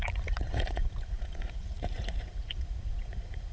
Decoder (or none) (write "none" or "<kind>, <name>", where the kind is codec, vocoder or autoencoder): vocoder, Vocos